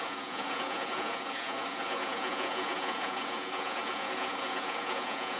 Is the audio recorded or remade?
remade